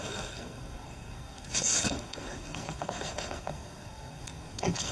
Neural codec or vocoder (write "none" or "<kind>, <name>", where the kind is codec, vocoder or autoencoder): codec, SNAC